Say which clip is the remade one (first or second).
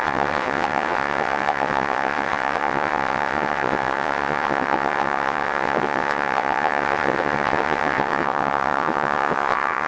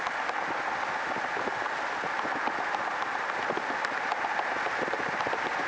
first